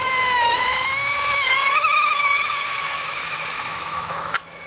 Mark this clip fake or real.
fake